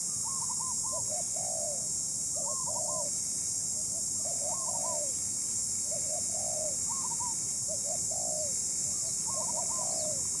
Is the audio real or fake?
real